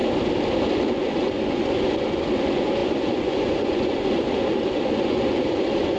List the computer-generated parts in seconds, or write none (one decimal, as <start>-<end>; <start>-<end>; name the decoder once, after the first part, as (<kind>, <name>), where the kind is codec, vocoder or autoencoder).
0.9-6.0 (vocoder, Vocos)